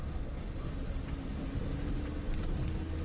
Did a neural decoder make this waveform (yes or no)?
no